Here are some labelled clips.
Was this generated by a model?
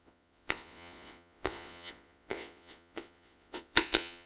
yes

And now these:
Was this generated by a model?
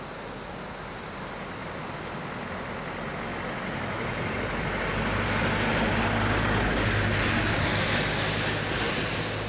no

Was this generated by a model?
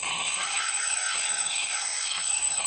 yes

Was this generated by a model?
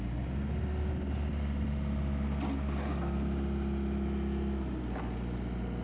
no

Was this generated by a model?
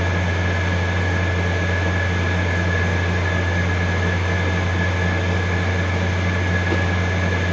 no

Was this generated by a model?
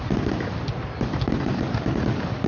no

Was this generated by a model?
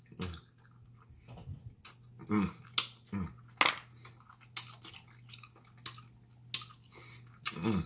no